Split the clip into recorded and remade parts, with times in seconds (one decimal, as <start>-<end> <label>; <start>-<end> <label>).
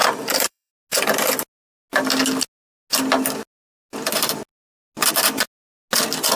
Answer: 0.0-0.7 remade; 0.7-6.4 recorded